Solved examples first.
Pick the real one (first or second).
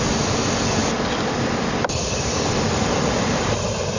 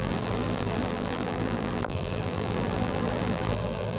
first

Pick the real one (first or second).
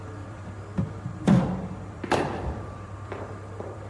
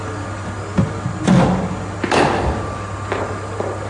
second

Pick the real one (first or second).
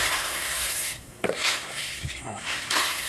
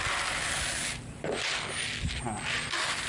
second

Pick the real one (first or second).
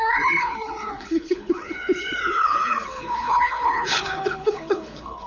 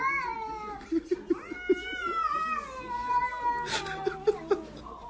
second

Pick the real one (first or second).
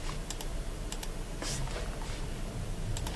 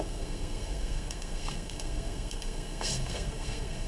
first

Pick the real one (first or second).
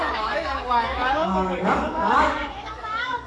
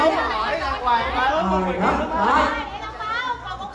second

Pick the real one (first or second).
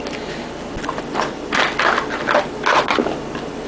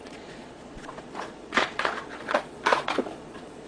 first